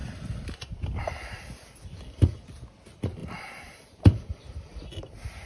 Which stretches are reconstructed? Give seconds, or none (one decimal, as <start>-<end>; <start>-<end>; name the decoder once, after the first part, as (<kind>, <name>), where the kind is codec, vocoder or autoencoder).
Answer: 3.2-5.5 (vocoder, BigVGAN v2)